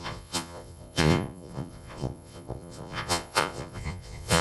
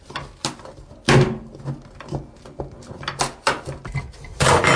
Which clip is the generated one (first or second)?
first